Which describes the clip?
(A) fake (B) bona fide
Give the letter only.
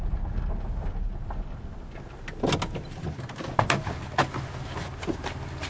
B